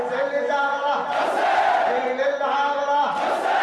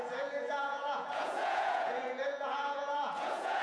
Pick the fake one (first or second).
second